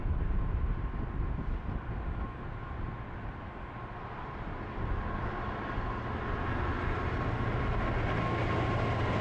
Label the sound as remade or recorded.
recorded